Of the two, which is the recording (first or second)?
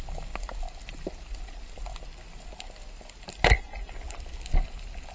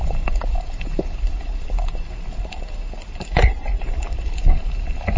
first